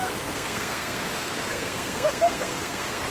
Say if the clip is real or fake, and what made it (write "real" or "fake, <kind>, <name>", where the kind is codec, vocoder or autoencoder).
fake, codec, SNAC